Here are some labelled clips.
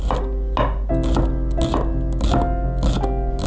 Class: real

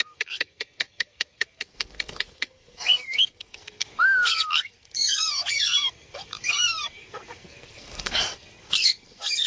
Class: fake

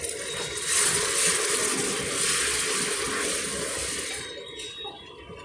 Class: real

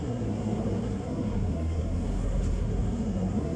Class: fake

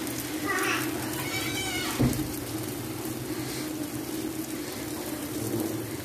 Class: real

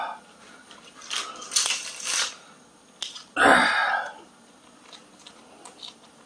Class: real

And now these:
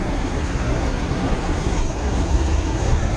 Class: fake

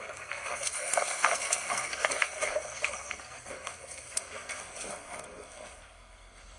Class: fake